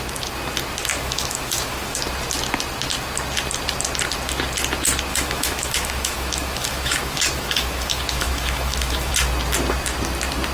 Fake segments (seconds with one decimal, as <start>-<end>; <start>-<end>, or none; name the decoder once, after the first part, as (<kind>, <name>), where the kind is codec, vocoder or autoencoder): 0.9-2.0 (autoencoder, DAC-VAE); 5.1-9.1